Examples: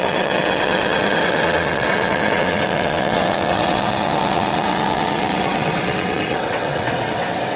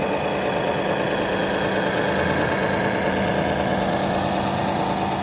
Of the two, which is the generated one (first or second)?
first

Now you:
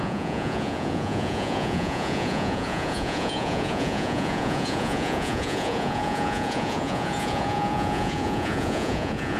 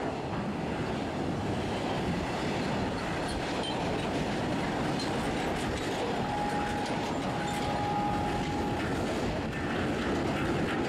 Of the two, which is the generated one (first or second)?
first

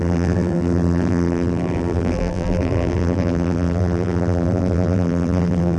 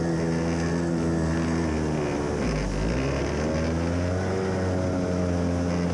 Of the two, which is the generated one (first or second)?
first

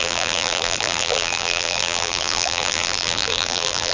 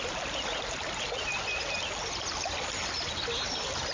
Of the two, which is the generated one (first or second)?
first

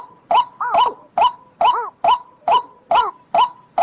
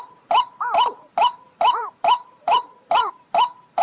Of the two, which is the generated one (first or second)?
second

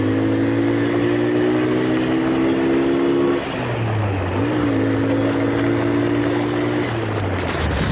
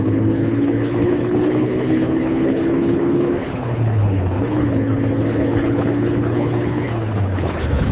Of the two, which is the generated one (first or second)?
second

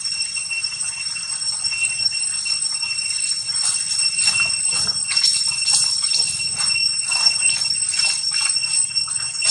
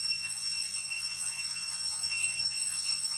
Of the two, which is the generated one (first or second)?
second